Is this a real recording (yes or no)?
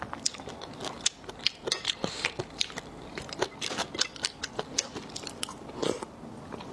yes